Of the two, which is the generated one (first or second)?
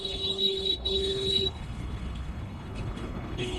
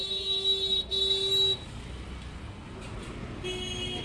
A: first